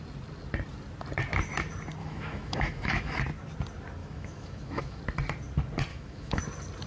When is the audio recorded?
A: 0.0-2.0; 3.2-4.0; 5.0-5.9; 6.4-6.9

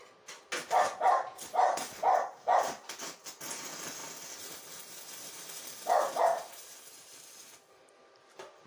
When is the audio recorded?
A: 0.0-8.7

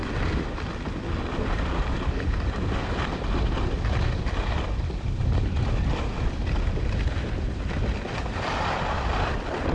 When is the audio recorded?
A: 0.0-9.7

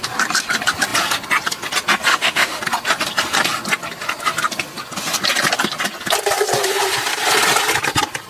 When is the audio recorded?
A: 0.0-2.1; 2.6-8.3

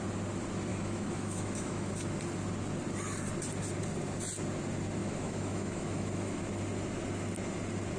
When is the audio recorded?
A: 0.0-0.7; 1.9-5.0; 6.4-8.0

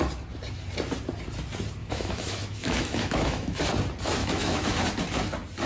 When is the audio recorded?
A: 0.0-1.8; 3.6-4.2; 4.9-5.7

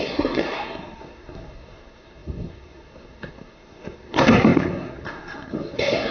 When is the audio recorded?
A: none

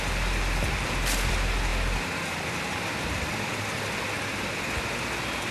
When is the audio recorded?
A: 0.0-5.5